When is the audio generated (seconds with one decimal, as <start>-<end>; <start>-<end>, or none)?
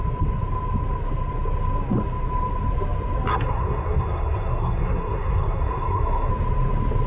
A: 3.3-6.3